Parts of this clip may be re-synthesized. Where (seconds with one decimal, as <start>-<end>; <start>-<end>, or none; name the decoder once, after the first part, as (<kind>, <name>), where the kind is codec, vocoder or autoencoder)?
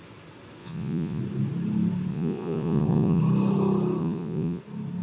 0.6-1.2 (vocoder, Vocos); 2.1-3.2; 4.0-4.6